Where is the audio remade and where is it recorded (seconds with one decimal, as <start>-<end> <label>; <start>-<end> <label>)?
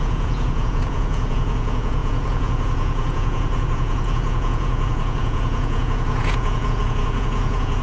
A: 0.0-7.8 remade